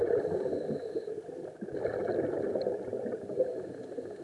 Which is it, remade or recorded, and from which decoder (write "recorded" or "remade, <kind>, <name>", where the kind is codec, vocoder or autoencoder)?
recorded